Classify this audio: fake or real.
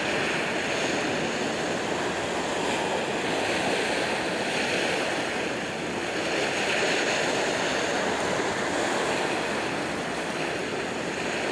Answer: real